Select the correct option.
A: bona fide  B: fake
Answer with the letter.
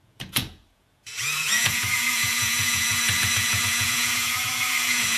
B